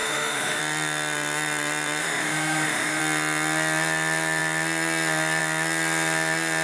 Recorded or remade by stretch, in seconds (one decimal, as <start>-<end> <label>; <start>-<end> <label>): 0.0-0.6 remade; 0.6-2.0 recorded; 2.0-3.0 remade; 3.0-6.6 recorded